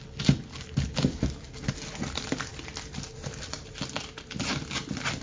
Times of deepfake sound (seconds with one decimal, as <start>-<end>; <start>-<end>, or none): none